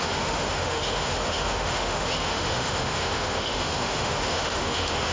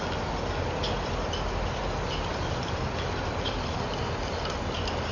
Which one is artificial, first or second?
first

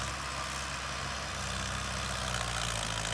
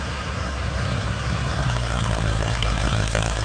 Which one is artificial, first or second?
second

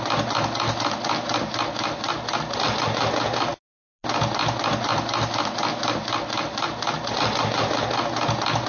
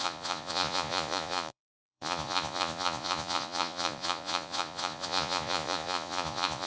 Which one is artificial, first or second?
second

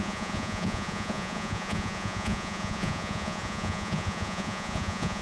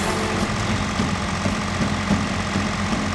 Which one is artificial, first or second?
first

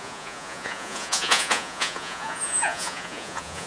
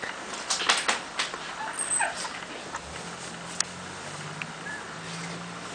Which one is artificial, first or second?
first